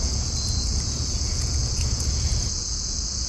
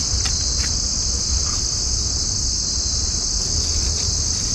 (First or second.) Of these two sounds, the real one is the second